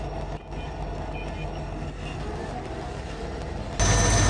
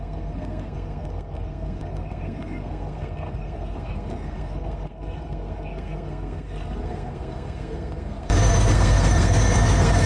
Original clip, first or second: first